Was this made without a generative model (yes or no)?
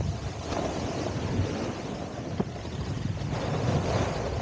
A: yes